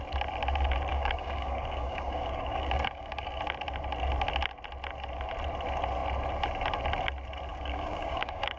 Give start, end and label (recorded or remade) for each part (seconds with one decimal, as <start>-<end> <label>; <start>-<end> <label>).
0.0-0.9 recorded; 0.9-3.4 remade; 3.4-7.5 recorded; 7.5-8.6 remade